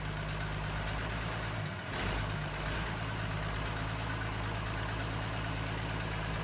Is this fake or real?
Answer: real